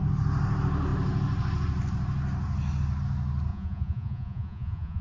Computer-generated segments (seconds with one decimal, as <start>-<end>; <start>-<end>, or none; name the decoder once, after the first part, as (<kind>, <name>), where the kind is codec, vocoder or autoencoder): 3.5-5.0 (vocoder, Vocos)